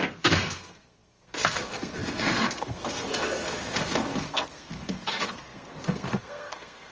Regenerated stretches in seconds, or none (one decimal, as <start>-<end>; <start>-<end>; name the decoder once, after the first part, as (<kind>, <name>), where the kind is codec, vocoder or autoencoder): 0.0-6.9 (codec, SNAC)